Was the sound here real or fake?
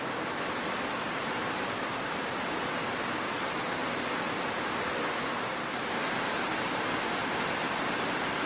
real